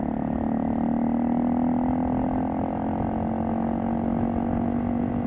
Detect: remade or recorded recorded